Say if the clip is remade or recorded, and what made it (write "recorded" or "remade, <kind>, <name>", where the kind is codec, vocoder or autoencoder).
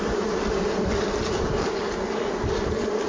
remade, vocoder, BigVGAN v2